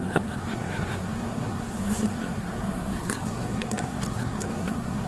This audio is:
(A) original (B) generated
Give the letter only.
B